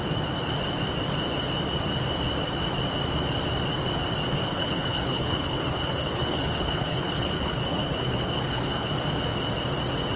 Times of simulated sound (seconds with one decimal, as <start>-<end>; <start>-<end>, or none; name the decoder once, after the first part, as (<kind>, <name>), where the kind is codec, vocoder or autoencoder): 4.4-8.9 (codec, HILCodec)